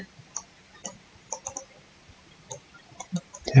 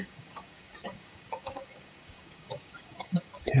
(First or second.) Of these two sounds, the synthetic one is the second